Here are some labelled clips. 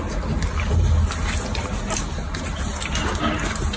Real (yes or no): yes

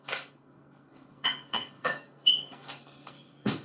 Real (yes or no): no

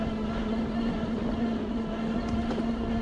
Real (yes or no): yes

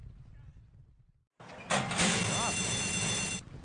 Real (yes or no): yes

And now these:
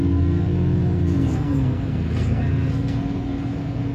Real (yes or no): no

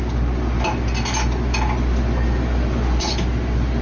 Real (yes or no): yes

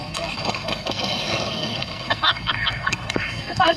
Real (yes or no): no